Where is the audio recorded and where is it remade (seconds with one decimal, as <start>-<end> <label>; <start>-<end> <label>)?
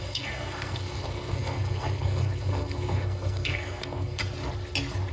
0.0-4.2 remade; 4.2-5.1 recorded